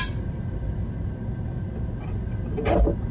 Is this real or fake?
real